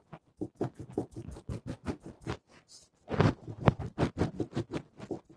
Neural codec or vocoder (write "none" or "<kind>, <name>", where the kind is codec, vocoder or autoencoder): none